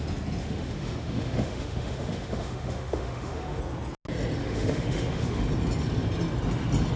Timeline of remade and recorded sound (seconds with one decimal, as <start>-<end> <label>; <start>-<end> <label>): 0.0-0.4 recorded; 0.4-3.6 remade; 3.6-4.4 recorded; 4.4-5.4 remade; 5.4-7.0 recorded